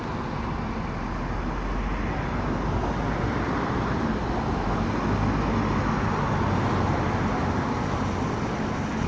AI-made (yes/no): no